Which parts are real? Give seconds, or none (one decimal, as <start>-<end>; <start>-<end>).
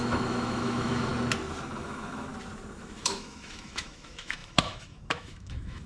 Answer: 1.1-1.8; 2.3-2.8